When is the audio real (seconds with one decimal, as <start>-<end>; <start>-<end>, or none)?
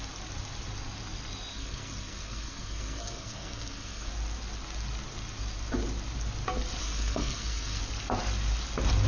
0.0-1.5; 4.1-6.8; 7.8-9.1